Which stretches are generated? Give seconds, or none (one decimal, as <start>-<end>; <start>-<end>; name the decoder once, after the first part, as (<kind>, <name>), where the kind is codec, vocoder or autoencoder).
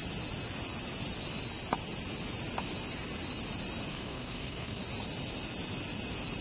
3.9-4.8 (codec, SNAC)